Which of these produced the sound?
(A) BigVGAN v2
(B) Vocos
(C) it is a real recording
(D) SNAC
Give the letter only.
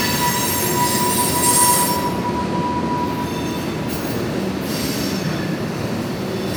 C